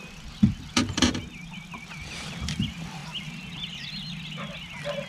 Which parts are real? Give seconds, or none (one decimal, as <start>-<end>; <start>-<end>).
1.2-1.8; 3.0-5.1